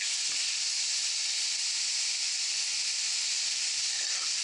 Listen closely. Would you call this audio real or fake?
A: real